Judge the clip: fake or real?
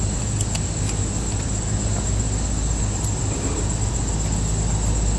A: real